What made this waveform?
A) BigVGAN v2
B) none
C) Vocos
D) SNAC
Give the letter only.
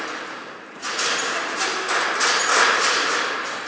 B